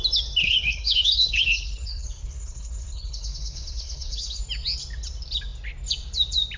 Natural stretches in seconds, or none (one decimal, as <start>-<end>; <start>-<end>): 0.0-0.4; 4.4-6.6

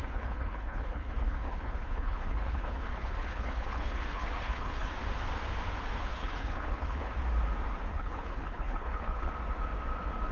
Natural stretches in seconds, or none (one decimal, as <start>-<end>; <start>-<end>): 4.9-6.1; 7.1-7.9; 9.3-10.3